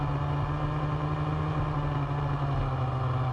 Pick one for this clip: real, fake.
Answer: real